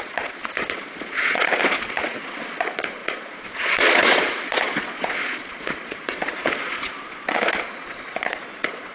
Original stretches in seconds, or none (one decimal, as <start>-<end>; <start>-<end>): none